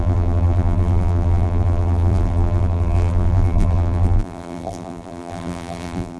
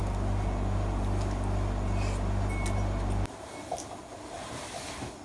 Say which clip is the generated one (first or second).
first